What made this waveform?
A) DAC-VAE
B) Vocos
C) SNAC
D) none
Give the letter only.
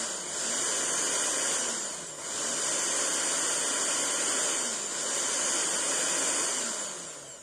D